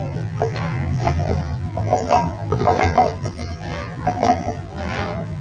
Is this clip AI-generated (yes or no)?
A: yes